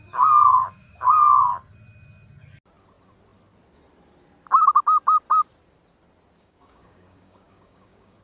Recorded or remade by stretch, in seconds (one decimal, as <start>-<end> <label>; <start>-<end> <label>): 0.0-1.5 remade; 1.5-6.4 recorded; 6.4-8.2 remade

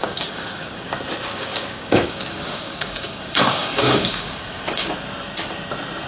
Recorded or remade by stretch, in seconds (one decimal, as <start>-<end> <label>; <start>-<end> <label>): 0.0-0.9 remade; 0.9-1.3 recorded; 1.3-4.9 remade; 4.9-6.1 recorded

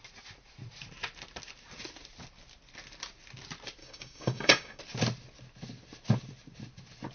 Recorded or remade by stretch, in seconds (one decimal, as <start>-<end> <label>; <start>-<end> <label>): 0.0-3.8 recorded; 3.8-4.8 remade; 4.8-7.1 recorded

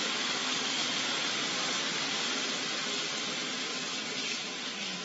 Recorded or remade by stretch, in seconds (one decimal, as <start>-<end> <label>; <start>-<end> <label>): 0.0-0.8 remade; 0.8-3.8 recorded; 3.8-5.0 remade

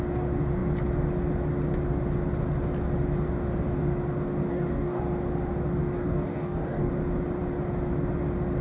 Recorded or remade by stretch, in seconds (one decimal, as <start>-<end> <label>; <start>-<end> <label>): 0.0-4.5 recorded; 4.5-5.0 remade; 5.0-5.8 recorded; 5.8-6.9 remade; 6.9-8.6 recorded

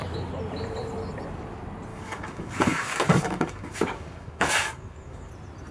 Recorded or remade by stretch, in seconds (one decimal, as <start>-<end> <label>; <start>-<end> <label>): 0.0-1.9 recorded; 1.9-5.3 remade; 5.3-5.7 recorded

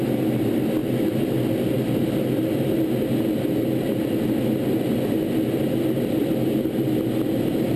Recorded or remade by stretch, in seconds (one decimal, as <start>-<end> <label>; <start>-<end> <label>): 0.0-7.8 recorded

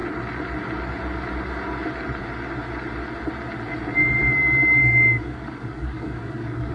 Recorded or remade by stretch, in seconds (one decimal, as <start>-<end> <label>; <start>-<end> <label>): 0.0-4.8 recorded; 4.8-6.7 remade